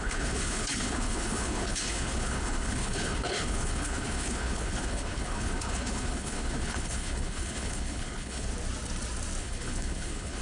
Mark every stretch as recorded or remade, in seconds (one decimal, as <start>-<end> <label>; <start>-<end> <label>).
0.0-8.5 remade; 8.5-9.4 recorded; 9.4-10.4 remade